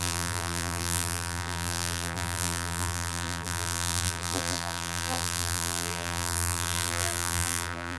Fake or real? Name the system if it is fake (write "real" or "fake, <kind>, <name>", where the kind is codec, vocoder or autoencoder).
fake, vocoder, BigVGAN v2